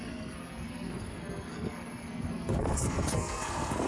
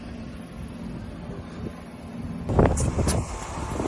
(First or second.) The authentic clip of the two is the second